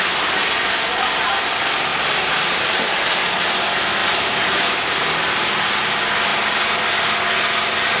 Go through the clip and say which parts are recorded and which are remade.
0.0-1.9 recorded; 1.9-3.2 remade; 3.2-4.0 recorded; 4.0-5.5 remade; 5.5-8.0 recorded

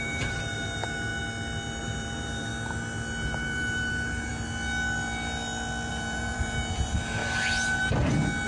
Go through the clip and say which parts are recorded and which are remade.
0.0-1.1 remade; 1.1-1.8 recorded; 1.8-2.5 remade; 2.5-3.2 recorded; 3.2-4.3 remade; 4.3-5.9 recorded; 5.9-7.2 remade; 7.2-8.5 recorded

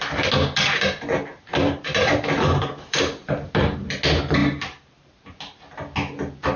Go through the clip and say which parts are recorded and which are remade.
0.0-1.3 recorded; 1.3-3.5 remade; 3.5-4.4 recorded; 4.4-5.3 remade; 5.3-6.6 recorded

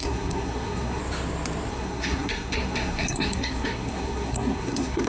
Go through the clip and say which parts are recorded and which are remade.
0.0-1.0 remade; 1.0-1.7 recorded; 1.7-5.1 remade

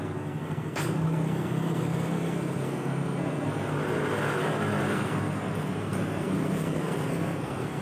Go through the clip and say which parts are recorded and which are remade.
0.0-3.7 remade; 3.7-4.8 recorded; 4.8-7.8 remade

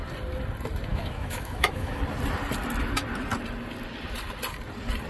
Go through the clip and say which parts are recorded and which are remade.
0.0-0.9 recorded; 0.9-2.0 remade; 2.0-5.1 recorded

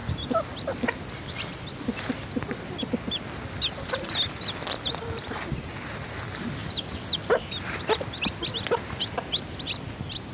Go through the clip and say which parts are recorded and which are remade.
0.0-10.3 recorded

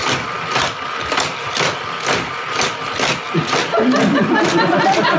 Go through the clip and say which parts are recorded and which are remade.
0.0-5.2 recorded